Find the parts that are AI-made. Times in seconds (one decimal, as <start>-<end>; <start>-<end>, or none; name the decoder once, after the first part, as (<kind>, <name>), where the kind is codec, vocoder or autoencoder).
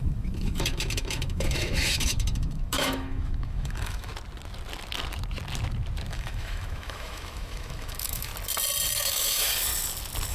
0.0-4.1 (autoencoder, DAC-VAE); 6.1-8.3; 9.0-9.5